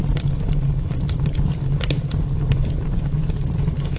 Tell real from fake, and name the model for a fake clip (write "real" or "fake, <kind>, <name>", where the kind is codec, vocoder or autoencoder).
real